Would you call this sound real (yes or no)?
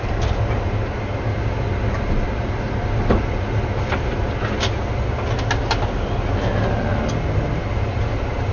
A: yes